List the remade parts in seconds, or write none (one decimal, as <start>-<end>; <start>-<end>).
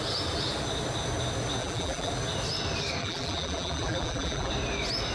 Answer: 1.6-2.1; 3.0-4.5